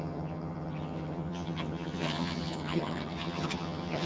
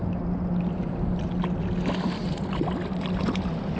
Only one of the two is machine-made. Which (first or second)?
first